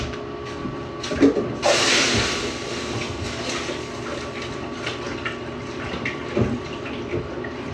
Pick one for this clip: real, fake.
real